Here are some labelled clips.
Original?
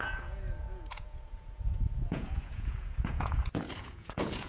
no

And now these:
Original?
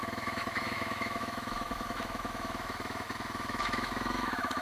no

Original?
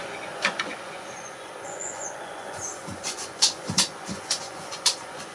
no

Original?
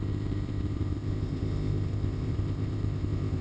no